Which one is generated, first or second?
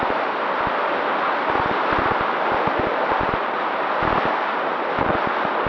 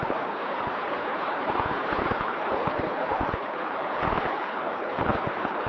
second